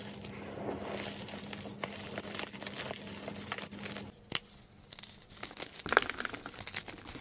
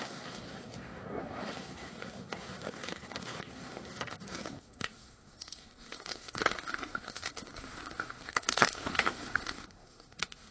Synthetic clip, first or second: second